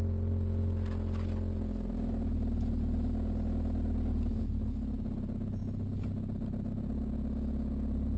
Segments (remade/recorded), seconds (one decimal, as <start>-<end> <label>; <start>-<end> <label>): 0.0-8.2 recorded